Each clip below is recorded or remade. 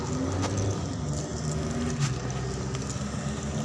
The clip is recorded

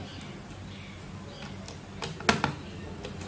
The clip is recorded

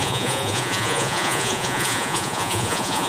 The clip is remade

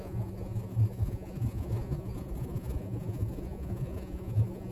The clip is remade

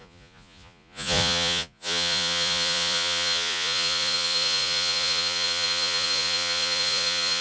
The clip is remade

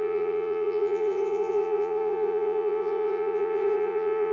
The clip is remade